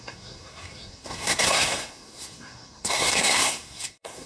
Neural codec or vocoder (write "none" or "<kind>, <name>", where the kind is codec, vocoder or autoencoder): codec, SNAC